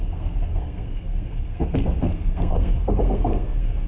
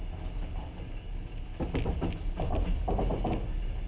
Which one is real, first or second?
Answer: second